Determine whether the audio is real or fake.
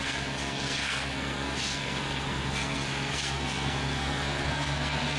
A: fake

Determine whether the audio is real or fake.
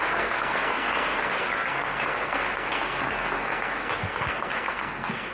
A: fake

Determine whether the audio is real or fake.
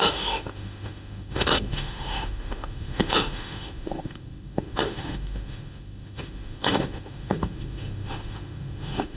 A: fake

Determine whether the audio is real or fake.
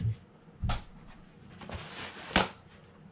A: real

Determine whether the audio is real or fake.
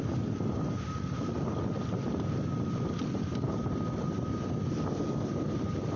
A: real